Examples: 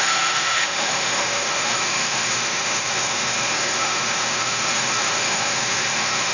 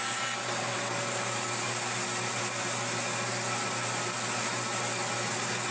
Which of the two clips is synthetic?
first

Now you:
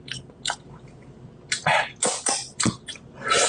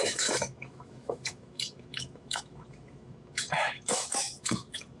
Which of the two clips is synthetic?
second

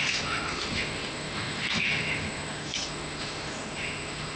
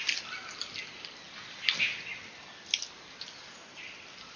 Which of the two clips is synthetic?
first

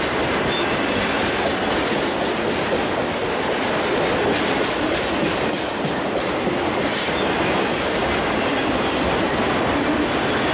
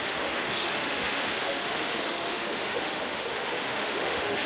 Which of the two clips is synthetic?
second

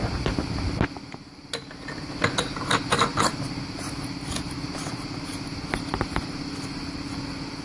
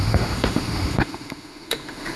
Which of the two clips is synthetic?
second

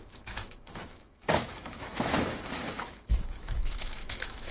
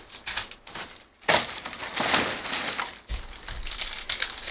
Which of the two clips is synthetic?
first